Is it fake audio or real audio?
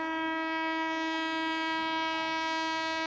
fake